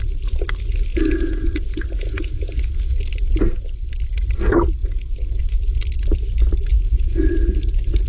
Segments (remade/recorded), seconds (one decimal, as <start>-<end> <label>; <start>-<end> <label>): 0.0-0.9 recorded; 0.9-2.9 remade; 2.9-4.8 recorded; 4.8-5.4 remade; 5.4-6.7 recorded; 6.7-7.6 remade; 7.6-8.1 recorded